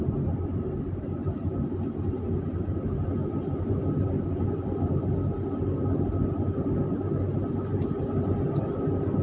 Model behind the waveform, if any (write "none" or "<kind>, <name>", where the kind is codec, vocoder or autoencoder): none